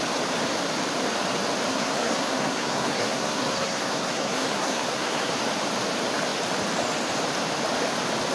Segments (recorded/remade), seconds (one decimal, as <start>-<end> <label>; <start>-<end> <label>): 0.0-1.7 recorded; 1.7-5.3 remade; 5.3-8.3 recorded